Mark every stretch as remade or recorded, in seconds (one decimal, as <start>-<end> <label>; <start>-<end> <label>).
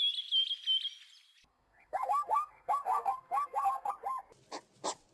0.0-1.5 recorded; 1.5-3.9 remade; 3.9-5.1 recorded